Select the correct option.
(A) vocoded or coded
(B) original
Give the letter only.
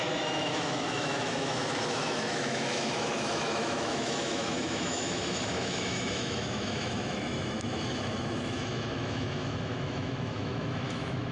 A